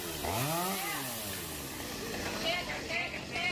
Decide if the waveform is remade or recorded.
recorded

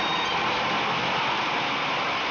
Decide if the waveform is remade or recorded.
recorded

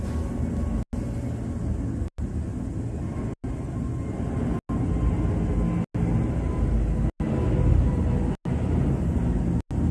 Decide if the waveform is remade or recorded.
recorded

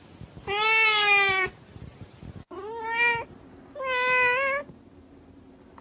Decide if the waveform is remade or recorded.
recorded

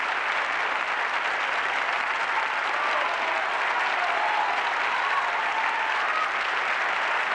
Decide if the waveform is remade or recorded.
recorded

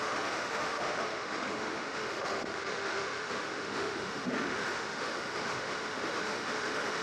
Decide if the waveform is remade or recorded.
remade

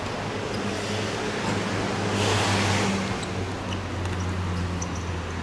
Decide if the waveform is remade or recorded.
recorded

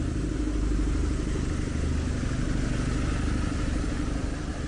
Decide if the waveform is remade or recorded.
recorded